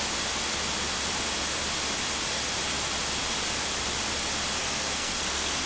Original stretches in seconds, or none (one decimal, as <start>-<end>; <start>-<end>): 0.0-4.6